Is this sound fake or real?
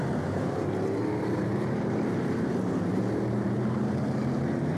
fake